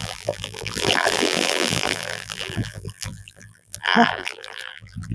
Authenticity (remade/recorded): remade